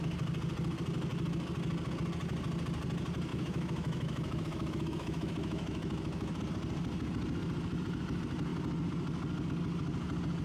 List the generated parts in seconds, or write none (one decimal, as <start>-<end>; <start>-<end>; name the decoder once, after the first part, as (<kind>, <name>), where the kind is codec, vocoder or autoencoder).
3.3-6.4 (autoencoder, DAC-VAE)